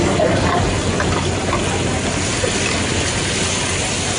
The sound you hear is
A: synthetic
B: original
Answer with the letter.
B